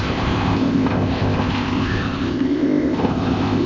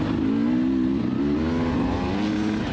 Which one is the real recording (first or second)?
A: second